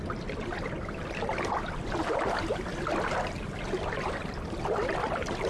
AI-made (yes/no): yes